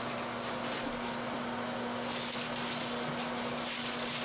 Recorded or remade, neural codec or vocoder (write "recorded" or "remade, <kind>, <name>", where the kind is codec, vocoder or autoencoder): recorded